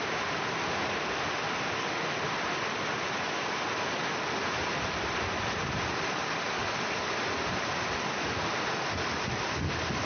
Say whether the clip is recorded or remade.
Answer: recorded